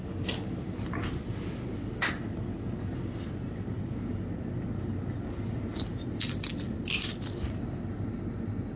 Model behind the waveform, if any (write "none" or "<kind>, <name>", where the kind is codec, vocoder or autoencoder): none